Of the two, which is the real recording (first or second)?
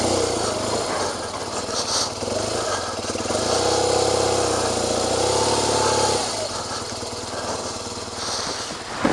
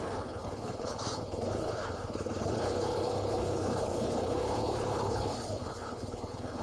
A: first